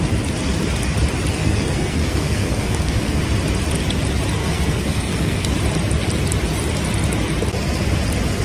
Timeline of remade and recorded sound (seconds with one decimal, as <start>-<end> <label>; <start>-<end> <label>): 0.0-1.3 recorded; 1.3-3.2 remade; 3.2-4.4 recorded; 4.4-5.5 remade; 5.5-8.4 recorded

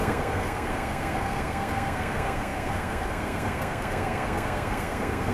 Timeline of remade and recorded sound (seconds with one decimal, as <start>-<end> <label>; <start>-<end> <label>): 0.0-5.3 remade

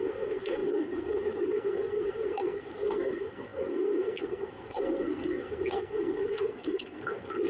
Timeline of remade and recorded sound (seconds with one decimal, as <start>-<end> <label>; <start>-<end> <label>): 0.0-7.5 remade

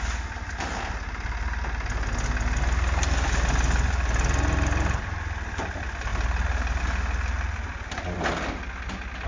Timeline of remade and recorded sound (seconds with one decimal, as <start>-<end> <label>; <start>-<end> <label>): 0.0-9.3 recorded

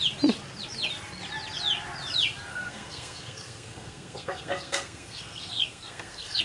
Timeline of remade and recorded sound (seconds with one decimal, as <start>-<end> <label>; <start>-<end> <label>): 0.0-2.5 recorded; 2.5-6.4 remade

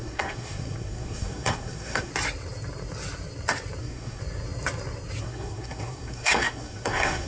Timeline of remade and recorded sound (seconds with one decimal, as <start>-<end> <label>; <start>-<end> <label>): 0.0-2.1 remade; 2.1-3.8 recorded; 3.8-4.2 remade; 4.2-5.2 recorded; 5.2-7.3 remade

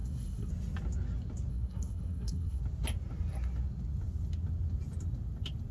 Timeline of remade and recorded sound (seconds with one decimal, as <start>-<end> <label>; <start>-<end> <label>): 0.0-0.5 remade; 0.5-1.5 recorded; 1.5-2.6 remade; 2.6-5.7 recorded